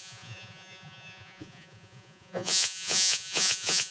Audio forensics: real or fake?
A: fake